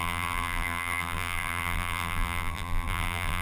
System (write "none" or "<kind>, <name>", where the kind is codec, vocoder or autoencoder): vocoder, BigVGAN v2